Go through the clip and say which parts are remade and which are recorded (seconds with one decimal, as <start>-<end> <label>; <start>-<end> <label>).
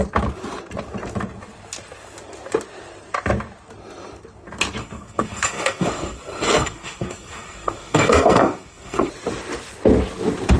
0.0-4.8 recorded; 4.8-9.1 remade; 9.1-10.6 recorded